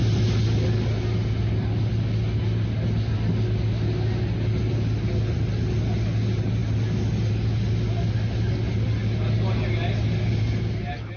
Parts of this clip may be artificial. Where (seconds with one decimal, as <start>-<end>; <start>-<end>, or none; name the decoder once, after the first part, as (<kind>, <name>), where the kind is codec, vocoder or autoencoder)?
none